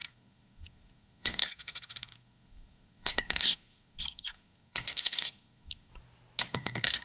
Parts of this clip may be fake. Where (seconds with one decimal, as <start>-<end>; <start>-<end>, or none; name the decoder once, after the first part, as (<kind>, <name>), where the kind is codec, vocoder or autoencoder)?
0.0-5.9 (codec, SNAC); 6.4-7.0

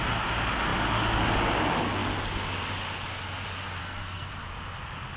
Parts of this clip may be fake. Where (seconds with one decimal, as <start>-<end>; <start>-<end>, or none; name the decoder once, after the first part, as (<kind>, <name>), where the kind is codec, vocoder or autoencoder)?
3.8-4.3 (codec, SNAC)

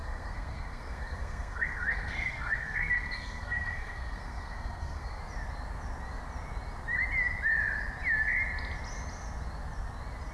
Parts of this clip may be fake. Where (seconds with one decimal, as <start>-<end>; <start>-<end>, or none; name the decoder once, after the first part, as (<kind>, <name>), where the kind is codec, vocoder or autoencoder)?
0.0-5.2 (codec, SNAC)

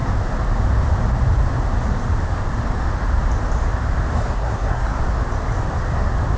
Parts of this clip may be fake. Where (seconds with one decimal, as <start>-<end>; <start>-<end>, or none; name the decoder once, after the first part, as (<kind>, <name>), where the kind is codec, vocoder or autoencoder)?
4.1-5.0 (codec, SNAC)

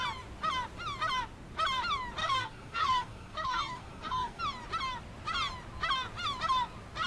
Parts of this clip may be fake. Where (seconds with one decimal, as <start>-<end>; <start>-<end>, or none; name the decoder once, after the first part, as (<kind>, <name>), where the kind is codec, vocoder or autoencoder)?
2.2-4.4 (codec, SNAC)

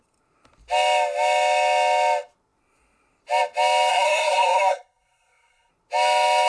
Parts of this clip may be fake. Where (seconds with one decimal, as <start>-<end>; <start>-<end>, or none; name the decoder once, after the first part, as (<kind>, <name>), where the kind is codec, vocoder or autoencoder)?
3.9-5.7 (codec, SNAC)

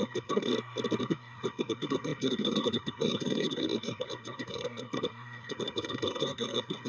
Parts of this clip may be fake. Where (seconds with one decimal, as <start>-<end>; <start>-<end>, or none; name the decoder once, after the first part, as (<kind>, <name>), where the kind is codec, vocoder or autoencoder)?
0.0-0.5 (codec, SNAC); 1.0-6.9

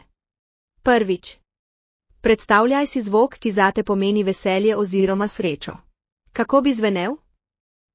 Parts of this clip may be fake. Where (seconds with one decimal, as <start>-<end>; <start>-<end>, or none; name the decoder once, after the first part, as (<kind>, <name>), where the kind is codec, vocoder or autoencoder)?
5.0-6.0 (codec, SNAC)